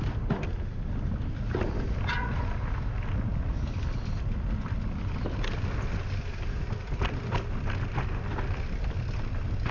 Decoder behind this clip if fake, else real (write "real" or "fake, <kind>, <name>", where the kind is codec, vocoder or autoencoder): real